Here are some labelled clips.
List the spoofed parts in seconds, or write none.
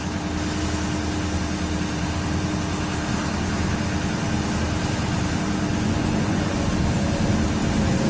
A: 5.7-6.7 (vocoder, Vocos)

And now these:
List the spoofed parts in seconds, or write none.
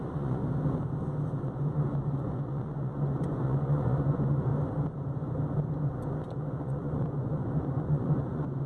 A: 0.0-0.4 (vocoder, Vocos); 1.7-4.5; 6.5-8.7